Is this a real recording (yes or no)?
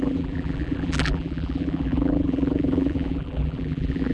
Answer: no